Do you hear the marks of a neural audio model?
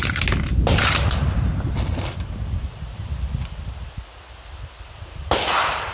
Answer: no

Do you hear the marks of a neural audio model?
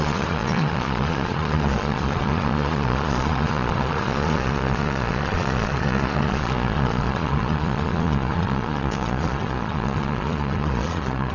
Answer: yes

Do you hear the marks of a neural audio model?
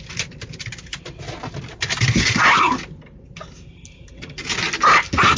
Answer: no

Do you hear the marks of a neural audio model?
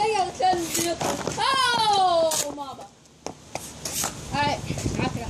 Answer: no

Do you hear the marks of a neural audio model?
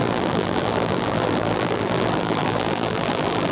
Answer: yes